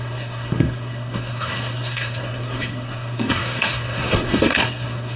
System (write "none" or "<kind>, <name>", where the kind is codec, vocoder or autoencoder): codec, SNAC